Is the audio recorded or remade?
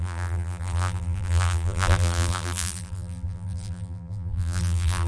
remade